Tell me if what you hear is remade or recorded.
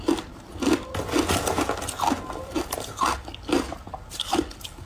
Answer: recorded